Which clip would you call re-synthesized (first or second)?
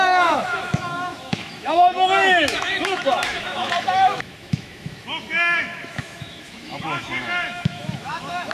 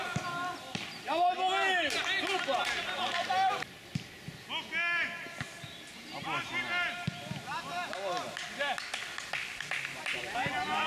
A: first